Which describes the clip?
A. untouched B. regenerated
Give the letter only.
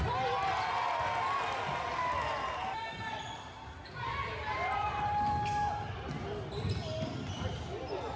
A